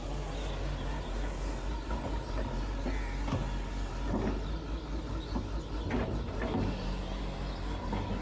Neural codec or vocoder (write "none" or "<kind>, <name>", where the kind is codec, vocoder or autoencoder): none